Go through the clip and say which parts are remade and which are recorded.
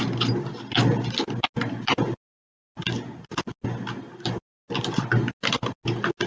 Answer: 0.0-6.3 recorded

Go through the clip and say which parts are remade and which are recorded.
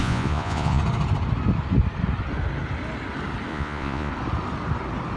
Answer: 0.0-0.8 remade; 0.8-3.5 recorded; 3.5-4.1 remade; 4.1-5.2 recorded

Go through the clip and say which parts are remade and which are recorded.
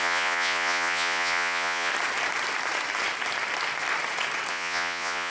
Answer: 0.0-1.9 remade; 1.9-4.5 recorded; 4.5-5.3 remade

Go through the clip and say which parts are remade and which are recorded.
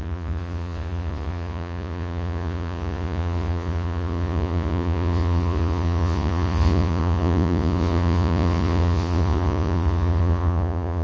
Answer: 0.0-11.0 remade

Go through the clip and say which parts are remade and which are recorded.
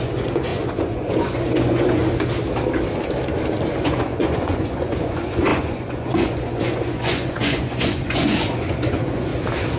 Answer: 0.0-2.0 remade; 2.0-3.8 recorded; 3.8-9.3 remade; 9.3-9.8 recorded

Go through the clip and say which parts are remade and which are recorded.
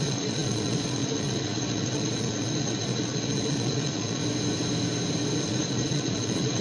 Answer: 0.0-4.2 remade; 4.2-5.4 recorded; 5.4-6.6 remade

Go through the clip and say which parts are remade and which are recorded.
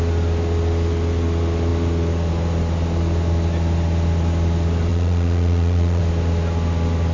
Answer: 0.0-4.9 recorded; 4.9-6.0 remade; 6.0-7.1 recorded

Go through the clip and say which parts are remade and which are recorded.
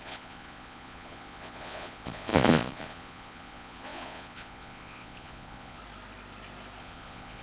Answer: 0.0-5.8 remade; 5.8-6.8 recorded; 6.8-7.4 remade